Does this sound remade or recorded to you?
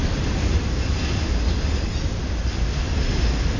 recorded